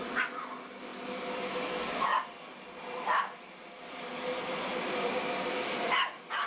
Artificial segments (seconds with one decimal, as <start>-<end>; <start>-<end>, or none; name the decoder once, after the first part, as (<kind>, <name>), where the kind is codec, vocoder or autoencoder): 2.1-6.0 (vocoder, BigVGAN v2)